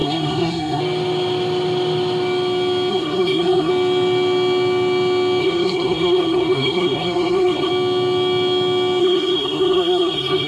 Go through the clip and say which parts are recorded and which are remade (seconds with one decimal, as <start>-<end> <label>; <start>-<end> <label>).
0.0-0.8 remade; 0.8-2.9 recorded; 2.9-3.7 remade; 3.7-5.4 recorded; 5.4-7.7 remade; 7.7-9.0 recorded; 9.0-10.5 remade